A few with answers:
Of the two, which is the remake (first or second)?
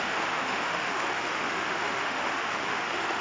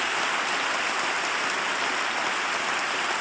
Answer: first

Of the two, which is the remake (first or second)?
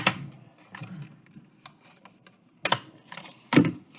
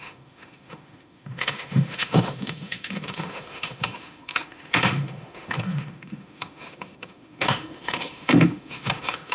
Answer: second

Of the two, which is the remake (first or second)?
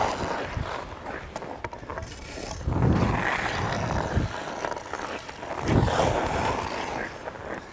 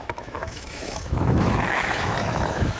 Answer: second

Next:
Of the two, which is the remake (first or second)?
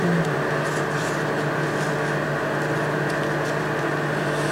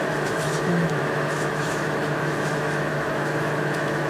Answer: second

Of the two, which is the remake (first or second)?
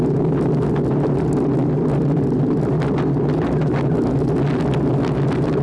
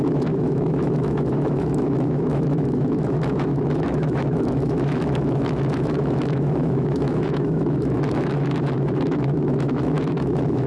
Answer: second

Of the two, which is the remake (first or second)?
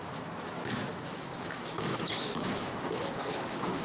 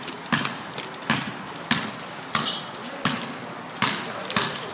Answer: first